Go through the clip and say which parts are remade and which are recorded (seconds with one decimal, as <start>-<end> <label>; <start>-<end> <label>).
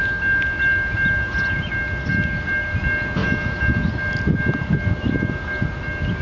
0.0-6.2 recorded